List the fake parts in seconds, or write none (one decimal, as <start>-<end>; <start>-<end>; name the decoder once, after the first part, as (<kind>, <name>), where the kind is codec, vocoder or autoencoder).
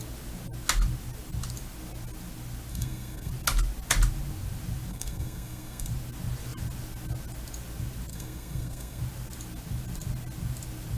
2.7-3.3 (codec, SNAC); 4.9-5.9; 8.1-9.0